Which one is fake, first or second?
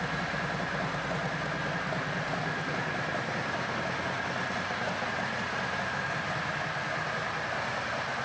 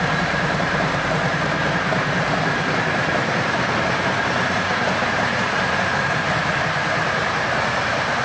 second